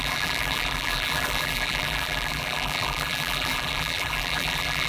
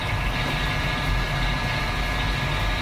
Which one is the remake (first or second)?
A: first